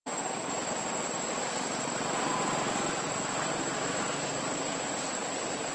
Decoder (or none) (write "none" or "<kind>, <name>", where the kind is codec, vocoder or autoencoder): vocoder, BigVGAN v2